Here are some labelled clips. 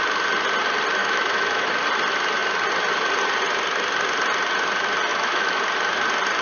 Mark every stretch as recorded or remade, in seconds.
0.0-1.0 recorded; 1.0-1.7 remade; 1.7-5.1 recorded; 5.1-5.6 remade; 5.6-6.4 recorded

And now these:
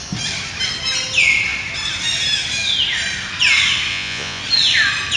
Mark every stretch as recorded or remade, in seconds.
0.0-3.9 recorded; 3.9-4.4 remade; 4.4-5.2 recorded

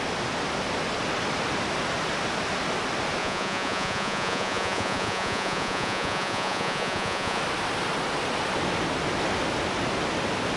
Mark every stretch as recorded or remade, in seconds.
0.0-3.2 recorded; 3.2-7.4 remade; 7.4-10.6 recorded